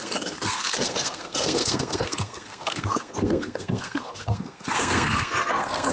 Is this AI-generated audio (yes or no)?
yes